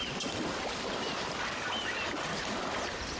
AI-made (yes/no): yes